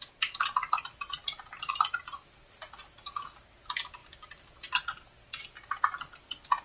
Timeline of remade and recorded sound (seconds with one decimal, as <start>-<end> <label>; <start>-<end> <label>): 0.0-4.0 recorded; 4.0-5.1 remade; 5.1-6.6 recorded